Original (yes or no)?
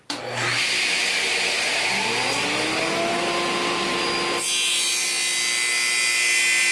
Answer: yes